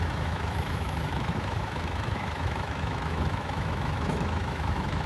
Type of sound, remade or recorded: remade